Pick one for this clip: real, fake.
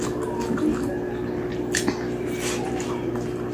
real